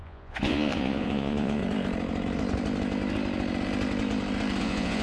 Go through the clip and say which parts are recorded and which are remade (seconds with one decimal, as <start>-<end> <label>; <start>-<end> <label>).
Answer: 0.0-1.6 remade; 1.6-4.6 recorded; 4.6-5.0 remade